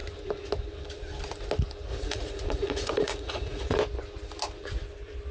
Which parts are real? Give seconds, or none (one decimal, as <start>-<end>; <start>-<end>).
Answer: 0.0-1.9; 3.8-5.3